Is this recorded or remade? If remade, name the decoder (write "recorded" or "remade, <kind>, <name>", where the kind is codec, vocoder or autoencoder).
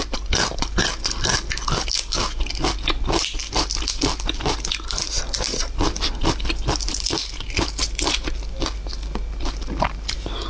recorded